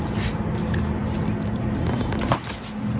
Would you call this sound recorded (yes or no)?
yes